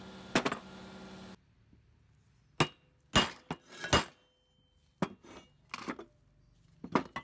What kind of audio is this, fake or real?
real